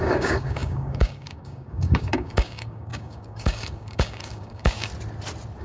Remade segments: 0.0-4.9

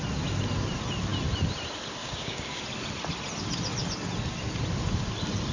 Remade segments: 2.0-2.6

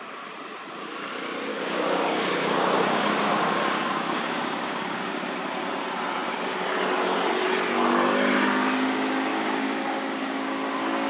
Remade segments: 1.5-5.1; 9.3-11.1

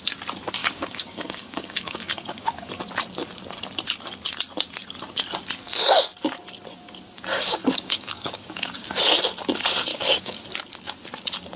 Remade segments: 0.6-2.7; 7.3-9.0; 9.9-10.4

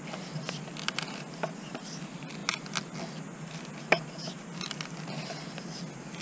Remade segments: none

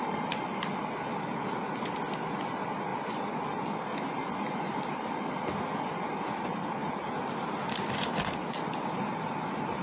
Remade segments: none